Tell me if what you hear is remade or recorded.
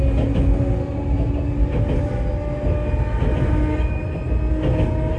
recorded